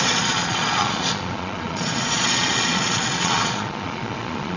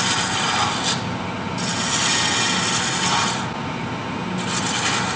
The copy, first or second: first